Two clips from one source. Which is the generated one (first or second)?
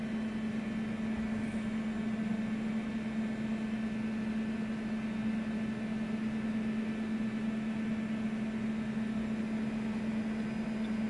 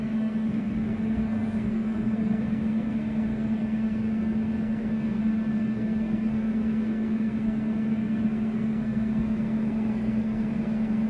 second